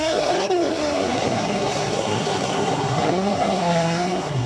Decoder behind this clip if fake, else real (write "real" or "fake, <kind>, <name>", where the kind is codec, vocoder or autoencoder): fake, codec, SNAC